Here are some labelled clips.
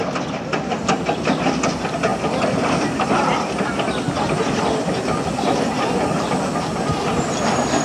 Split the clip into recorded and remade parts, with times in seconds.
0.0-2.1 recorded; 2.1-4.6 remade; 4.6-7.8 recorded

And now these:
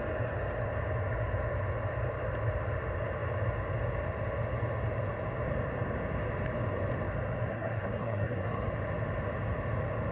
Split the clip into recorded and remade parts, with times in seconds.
0.0-7.5 recorded; 7.5-8.7 remade; 8.7-10.1 recorded

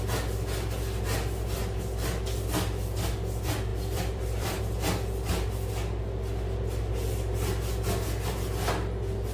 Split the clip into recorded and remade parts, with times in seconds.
0.0-3.7 recorded; 3.7-4.6 remade; 4.6-9.3 recorded

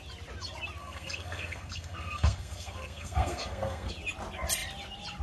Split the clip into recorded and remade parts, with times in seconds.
0.0-0.8 recorded; 0.8-3.9 remade; 3.9-5.2 recorded